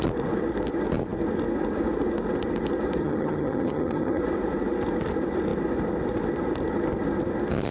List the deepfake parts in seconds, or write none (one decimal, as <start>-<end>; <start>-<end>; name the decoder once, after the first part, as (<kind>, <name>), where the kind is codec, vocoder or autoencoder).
3.0-4.2 (vocoder, HiFi-GAN)